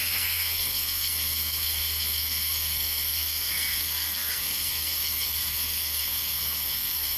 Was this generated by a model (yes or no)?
yes